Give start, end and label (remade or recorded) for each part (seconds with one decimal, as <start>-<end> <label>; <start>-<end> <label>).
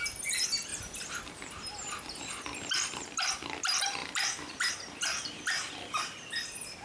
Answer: 0.0-4.0 recorded; 4.0-4.7 remade; 4.7-6.8 recorded